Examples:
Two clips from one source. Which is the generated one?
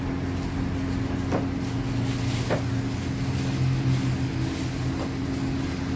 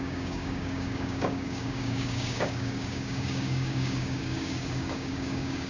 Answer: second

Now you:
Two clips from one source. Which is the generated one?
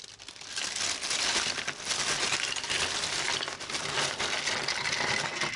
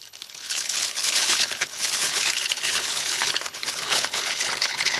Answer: second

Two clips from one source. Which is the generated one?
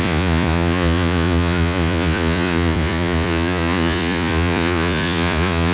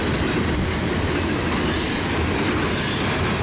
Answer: first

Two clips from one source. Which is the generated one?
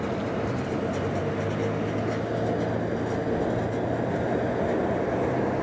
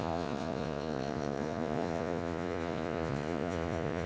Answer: second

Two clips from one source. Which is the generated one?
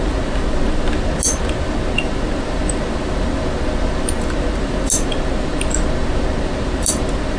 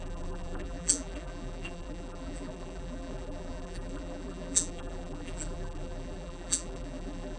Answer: second